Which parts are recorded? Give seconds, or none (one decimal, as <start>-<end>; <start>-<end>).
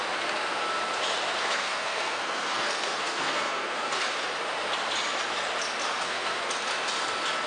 0.0-1.4; 3.9-5.9; 6.5-7.5